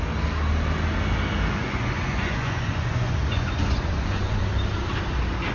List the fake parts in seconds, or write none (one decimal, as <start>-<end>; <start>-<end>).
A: 1.6-4.4